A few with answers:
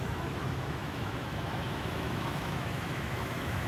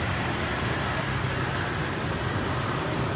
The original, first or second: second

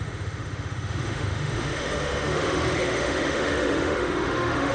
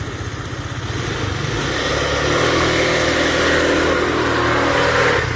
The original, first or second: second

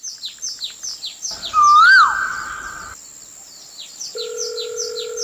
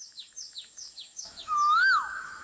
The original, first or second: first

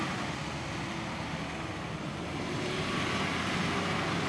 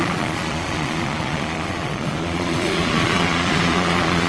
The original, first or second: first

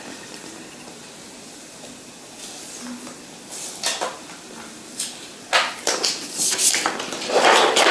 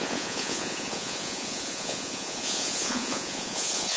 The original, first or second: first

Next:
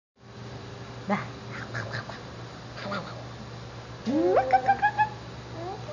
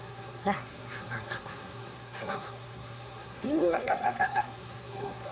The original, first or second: first